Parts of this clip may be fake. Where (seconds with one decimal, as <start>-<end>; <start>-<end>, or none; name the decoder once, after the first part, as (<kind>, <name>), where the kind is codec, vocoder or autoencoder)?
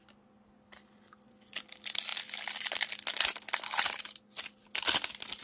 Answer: none